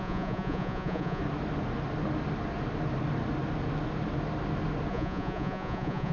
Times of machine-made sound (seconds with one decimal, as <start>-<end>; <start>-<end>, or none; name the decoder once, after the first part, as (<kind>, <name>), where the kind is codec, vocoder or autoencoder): 0.0-1.2 (vocoder, Vocos); 4.9-6.1

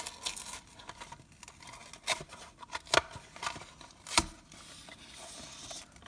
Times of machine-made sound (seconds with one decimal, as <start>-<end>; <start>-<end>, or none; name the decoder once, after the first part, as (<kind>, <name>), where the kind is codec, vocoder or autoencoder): none

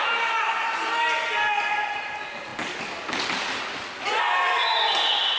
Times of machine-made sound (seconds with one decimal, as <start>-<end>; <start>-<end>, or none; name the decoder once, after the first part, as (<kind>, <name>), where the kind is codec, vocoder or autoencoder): none

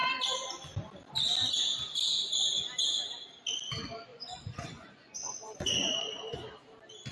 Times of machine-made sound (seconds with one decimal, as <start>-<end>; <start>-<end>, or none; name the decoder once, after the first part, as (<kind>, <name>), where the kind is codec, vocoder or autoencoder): 4.1-6.5 (vocoder, Vocos)

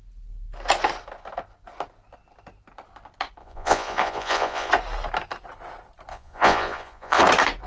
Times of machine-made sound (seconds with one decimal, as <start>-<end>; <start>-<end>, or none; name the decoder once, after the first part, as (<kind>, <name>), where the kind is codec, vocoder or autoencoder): 3.4-4.7 (vocoder, Vocos); 6.1-7.2